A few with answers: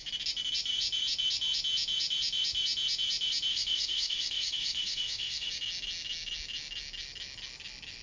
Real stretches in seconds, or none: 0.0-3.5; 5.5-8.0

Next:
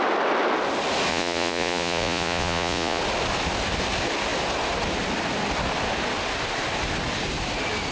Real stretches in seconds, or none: 0.0-1.1; 3.0-7.9